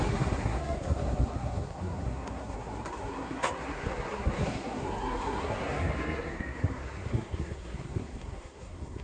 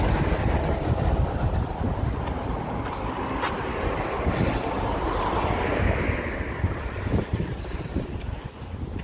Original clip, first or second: second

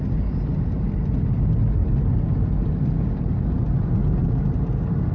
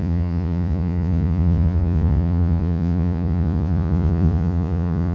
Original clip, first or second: first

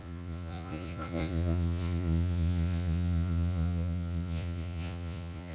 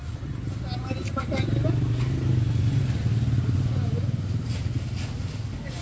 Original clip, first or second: second